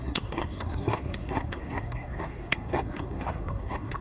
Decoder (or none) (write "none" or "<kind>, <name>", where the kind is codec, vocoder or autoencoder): codec, SNAC